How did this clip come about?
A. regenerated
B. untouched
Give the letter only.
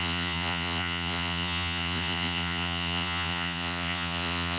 A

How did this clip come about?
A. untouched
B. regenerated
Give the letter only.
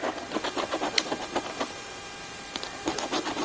A